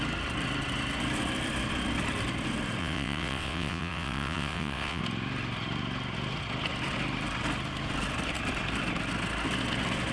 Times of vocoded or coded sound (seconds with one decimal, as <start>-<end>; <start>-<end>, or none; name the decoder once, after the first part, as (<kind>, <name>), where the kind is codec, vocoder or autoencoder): 2.8-5.0 (vocoder, WaveNeXt)